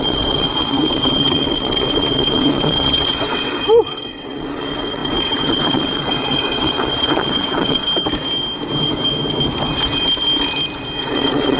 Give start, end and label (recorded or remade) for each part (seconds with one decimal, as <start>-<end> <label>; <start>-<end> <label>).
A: 0.0-7.8 remade; 7.8-11.0 recorded; 11.0-11.6 remade